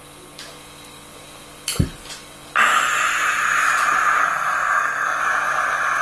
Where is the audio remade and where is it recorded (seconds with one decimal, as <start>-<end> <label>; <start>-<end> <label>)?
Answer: 0.0-4.2 recorded; 4.2-5.2 remade; 5.2-6.0 recorded